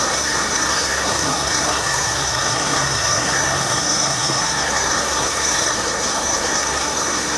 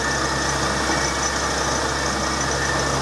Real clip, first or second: second